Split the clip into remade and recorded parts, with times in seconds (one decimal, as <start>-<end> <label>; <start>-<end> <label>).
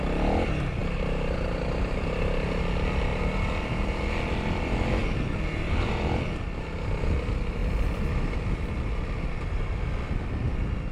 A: 0.0-5.0 recorded; 5.0-5.9 remade; 5.9-7.6 recorded; 7.6-8.2 remade; 8.2-10.9 recorded